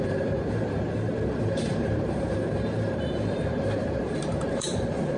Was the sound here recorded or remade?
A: remade